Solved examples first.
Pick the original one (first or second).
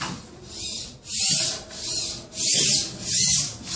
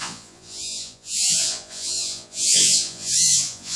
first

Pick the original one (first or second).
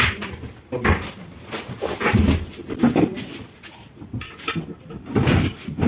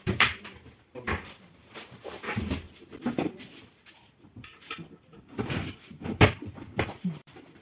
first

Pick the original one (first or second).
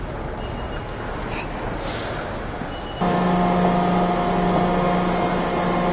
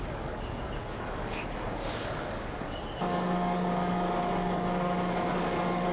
first